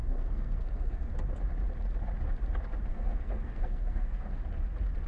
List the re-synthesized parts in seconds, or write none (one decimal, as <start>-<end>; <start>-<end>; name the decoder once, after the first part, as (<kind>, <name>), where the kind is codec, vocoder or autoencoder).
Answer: 0.0-1.1 (codec, SNAC); 2.9-4.4